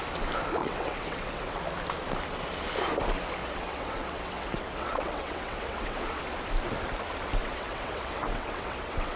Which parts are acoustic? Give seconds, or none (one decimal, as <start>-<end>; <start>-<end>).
0.0-0.6; 1.6-3.4; 6.2-7.4